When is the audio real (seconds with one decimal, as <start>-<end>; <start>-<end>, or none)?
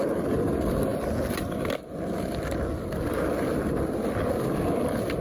0.0-5.2